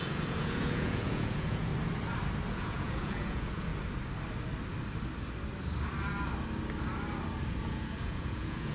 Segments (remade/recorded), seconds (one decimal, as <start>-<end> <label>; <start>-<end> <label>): 0.0-1.7 remade; 1.7-2.5 recorded; 2.5-3.7 remade; 3.7-7.7 recorded; 7.7-8.7 remade